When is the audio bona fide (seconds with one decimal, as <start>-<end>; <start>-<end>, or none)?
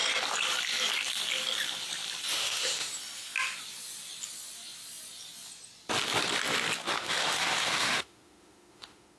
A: 0.0-2.3; 2.9-7.0